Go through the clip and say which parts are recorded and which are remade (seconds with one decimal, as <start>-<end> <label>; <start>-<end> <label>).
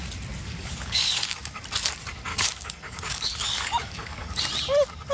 0.0-0.4 recorded; 0.4-1.6 remade; 1.6-2.3 recorded; 2.3-4.4 remade; 4.4-5.1 recorded